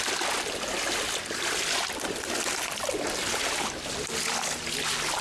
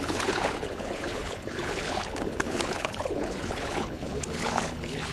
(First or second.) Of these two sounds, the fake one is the second